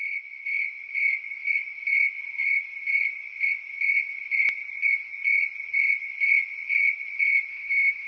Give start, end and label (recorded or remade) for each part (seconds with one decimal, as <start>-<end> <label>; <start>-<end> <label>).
0.0-7.5 recorded; 7.5-8.1 remade